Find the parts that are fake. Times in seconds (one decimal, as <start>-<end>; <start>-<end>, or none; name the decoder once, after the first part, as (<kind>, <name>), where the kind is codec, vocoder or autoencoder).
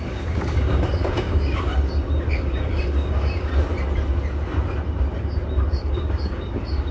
0.0-1.7 (codec, DAC); 2.3-3.5; 5.7-6.9